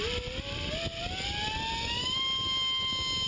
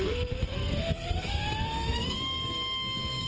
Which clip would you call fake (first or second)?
second